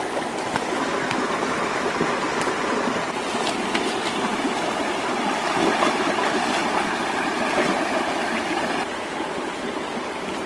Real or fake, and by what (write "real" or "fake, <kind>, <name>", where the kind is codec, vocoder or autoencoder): real